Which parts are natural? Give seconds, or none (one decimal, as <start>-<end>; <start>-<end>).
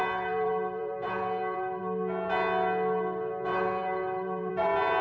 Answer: 1.8-3.5; 4.5-5.0